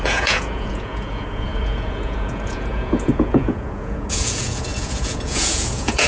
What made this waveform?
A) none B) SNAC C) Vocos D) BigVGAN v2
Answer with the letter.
C